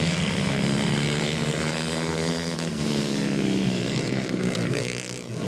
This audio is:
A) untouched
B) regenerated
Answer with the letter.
B